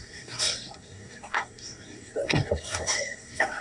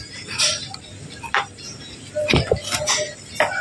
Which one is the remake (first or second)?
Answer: first